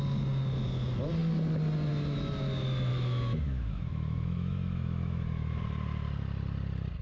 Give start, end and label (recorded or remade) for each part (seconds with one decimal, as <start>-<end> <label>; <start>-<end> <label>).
0.0-2.9 recorded; 2.9-5.6 remade; 5.6-7.0 recorded